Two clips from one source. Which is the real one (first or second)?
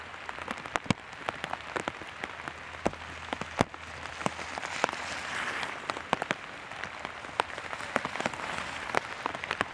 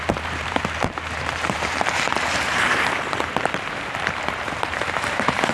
first